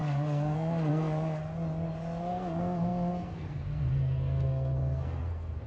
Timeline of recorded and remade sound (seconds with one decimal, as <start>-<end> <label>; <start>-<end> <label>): 0.0-1.4 remade; 1.4-2.2 recorded; 2.2-5.7 remade